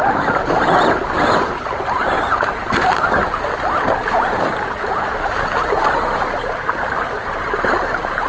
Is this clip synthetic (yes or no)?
no